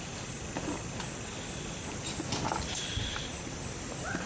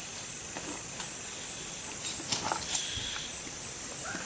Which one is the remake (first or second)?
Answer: second